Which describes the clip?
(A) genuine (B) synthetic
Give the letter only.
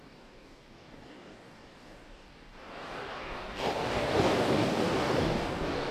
B